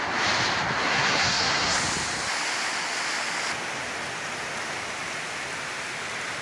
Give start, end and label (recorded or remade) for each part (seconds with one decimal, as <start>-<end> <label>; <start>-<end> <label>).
0.0-0.8 recorded; 0.8-1.8 remade; 1.8-6.4 recorded